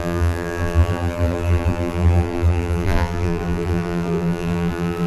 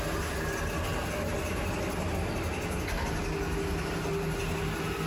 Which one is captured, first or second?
second